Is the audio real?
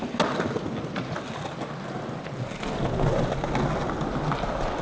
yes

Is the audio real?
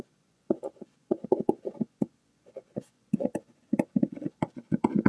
no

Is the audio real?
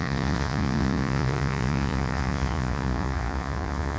no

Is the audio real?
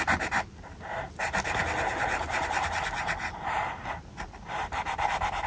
yes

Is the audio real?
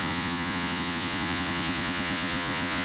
no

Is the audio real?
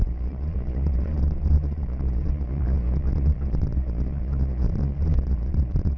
no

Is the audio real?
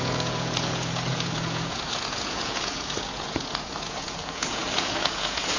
no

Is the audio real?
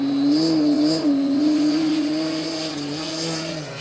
no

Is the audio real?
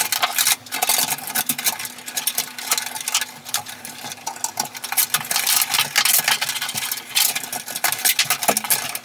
yes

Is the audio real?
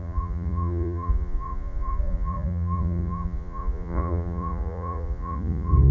no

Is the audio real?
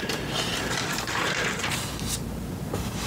yes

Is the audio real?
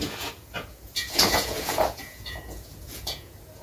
no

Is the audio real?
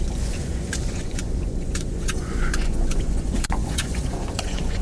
no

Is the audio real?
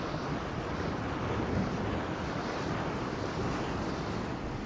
yes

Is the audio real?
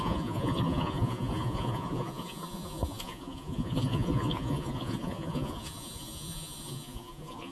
no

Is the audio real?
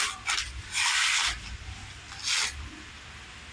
yes